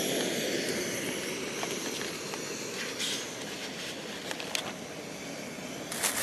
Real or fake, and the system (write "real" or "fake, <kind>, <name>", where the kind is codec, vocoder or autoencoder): real